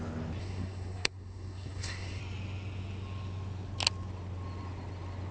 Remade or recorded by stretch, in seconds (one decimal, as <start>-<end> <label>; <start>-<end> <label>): 0.0-0.4 recorded; 0.4-2.2 remade; 2.2-5.3 recorded